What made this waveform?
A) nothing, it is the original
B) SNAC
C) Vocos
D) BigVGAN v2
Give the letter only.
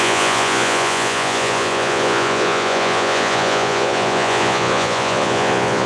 C